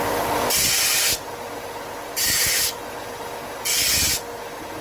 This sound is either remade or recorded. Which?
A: recorded